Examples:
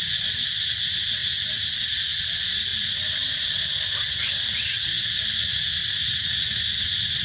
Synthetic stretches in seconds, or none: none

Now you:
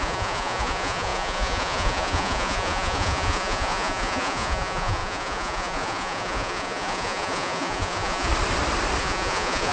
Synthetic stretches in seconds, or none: 0.0-8.3 (vocoder, Vocos); 9.0-9.7

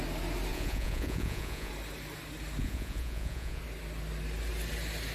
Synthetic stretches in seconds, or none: 0.5-1.7 (vocoder, Vocos); 2.6-3.6

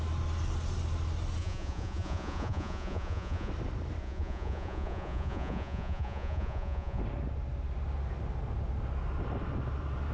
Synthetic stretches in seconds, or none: 1.4-3.5 (vocoder, Vocos); 4.0-7.0